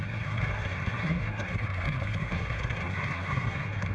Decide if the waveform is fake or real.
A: fake